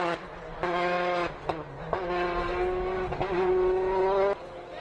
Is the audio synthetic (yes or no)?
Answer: no